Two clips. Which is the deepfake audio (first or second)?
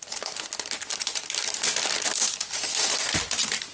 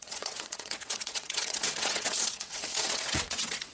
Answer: second